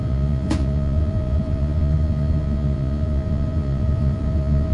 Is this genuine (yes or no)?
no